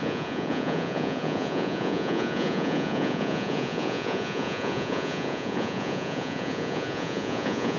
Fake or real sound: fake